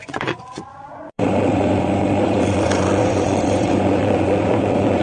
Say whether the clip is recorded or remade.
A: remade